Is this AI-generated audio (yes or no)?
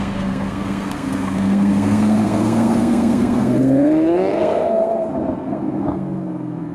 yes